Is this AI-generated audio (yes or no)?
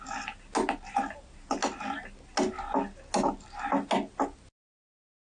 no